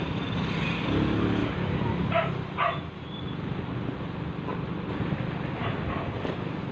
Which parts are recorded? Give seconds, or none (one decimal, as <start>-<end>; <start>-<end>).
0.0-6.7

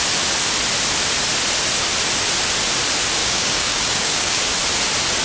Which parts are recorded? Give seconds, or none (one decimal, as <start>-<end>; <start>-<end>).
0.0-3.2; 4.4-5.2